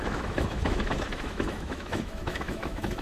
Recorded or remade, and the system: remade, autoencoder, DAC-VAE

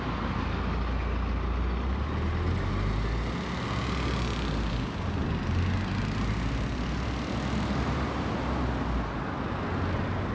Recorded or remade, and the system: recorded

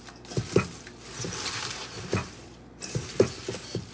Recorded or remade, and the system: recorded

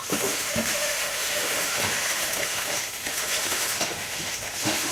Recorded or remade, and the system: remade, autoencoder, DAC-VAE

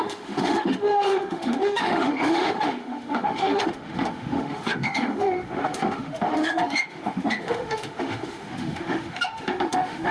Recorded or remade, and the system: remade, autoencoder, DAC-VAE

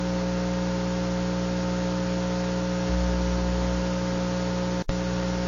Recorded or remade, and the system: recorded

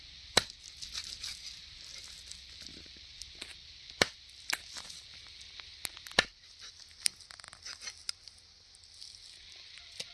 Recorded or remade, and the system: recorded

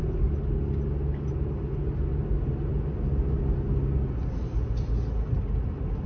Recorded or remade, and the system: recorded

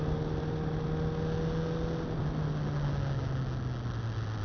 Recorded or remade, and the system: recorded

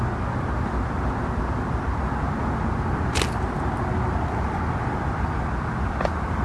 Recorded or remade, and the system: recorded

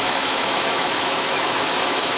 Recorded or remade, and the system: remade, autoencoder, DAC-VAE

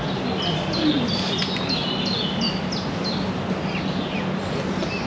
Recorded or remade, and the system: recorded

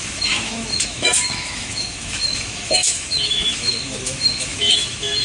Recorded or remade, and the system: remade, autoencoder, DAC-VAE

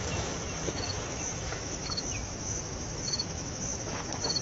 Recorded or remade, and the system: remade, autoencoder, DAC-VAE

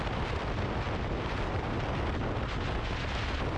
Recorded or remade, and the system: recorded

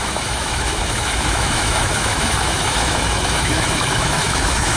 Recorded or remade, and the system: remade, autoencoder, DAC-VAE